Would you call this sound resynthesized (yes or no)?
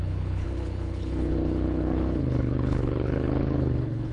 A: yes